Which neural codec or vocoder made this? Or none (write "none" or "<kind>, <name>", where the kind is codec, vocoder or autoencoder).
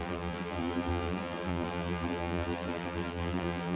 vocoder, BigVGAN v2